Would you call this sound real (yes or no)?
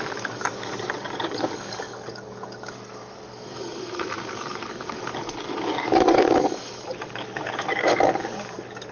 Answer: no